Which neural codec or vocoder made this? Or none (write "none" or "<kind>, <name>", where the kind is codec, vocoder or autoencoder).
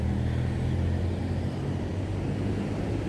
none